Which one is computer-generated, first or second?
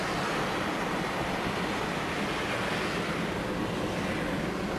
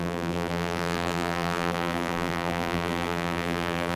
second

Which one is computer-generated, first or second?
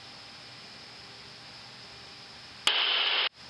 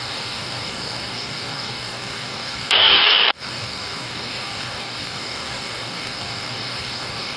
second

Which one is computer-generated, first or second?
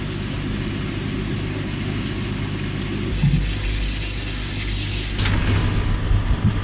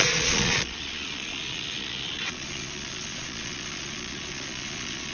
second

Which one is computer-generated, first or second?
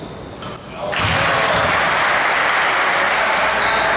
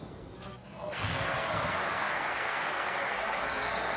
second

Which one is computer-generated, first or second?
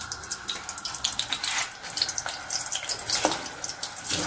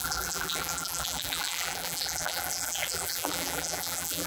second